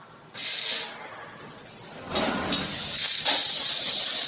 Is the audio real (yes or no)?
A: yes